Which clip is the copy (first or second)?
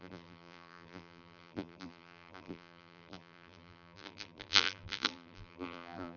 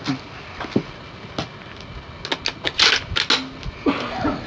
first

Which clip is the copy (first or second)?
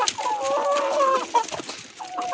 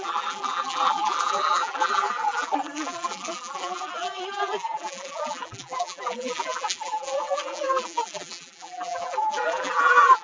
second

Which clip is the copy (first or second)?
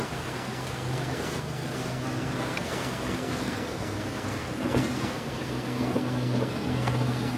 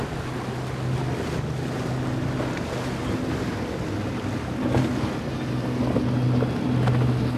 first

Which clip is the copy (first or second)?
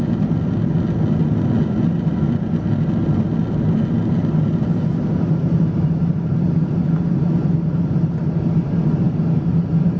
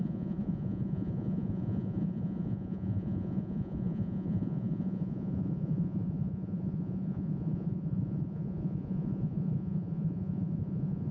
second